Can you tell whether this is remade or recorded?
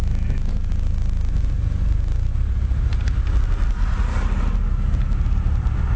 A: recorded